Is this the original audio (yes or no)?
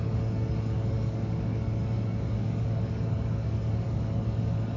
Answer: no